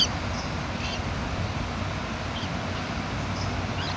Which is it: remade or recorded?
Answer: recorded